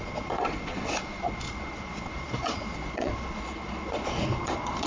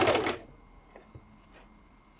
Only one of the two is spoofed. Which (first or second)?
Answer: first